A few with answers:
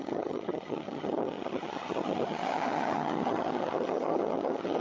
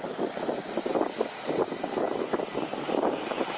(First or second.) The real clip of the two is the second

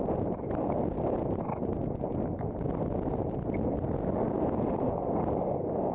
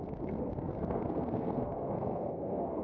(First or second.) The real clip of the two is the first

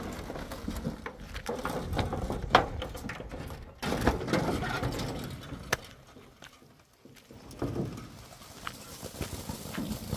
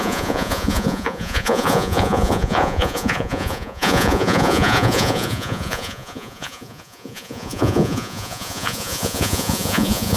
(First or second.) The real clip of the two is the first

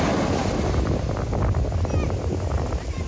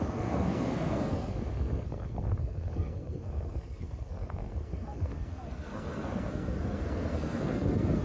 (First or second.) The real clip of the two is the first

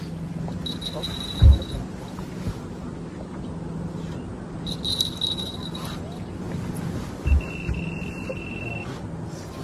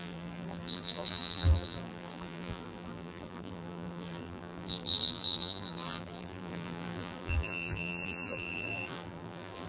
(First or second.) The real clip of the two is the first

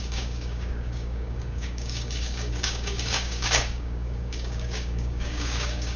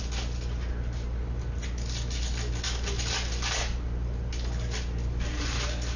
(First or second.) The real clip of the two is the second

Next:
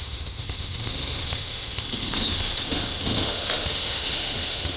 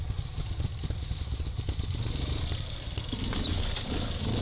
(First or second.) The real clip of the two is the second